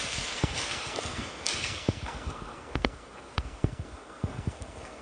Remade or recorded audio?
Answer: remade